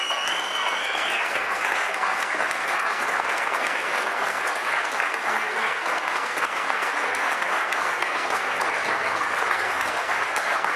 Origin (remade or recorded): remade